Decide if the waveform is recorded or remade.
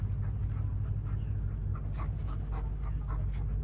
recorded